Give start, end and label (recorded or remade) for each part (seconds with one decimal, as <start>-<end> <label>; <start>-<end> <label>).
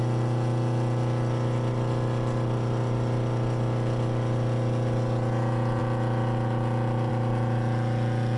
0.0-8.4 recorded